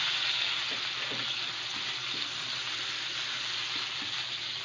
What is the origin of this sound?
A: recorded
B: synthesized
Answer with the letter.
A